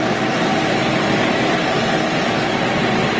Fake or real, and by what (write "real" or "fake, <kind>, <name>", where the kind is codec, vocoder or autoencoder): real